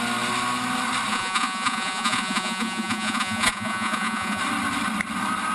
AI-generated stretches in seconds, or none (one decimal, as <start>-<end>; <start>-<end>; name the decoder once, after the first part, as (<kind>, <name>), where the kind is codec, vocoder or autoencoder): 1.1-4.4 (vocoder, Vocos)